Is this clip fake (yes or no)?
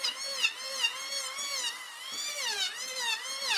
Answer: no